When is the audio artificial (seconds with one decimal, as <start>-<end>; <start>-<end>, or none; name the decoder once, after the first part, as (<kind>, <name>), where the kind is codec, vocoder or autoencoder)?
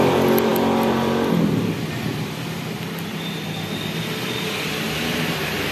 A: none